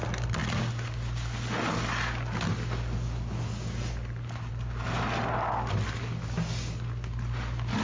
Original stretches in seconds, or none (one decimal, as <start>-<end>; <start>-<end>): 0.0-7.8